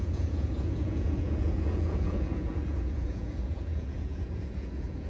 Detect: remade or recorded remade